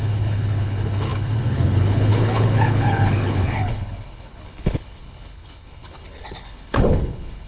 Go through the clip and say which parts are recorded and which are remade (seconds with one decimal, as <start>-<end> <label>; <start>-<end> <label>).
0.0-7.5 remade